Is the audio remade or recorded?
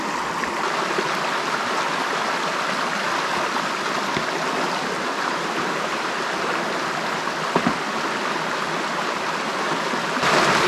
recorded